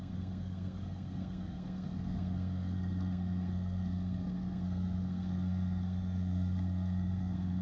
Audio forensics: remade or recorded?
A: remade